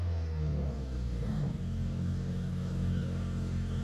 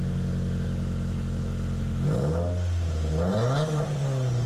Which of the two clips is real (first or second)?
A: second